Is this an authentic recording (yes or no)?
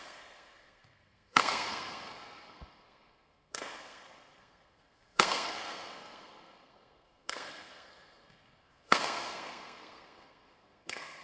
no